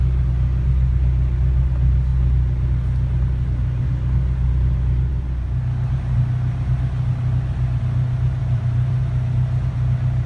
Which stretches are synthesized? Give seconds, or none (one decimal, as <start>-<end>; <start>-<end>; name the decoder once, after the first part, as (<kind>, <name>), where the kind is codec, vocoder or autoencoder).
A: 8.4-9.0 (vocoder, BigVGAN v2)